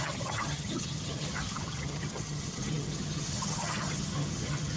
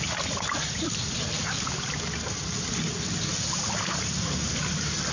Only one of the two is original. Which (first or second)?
second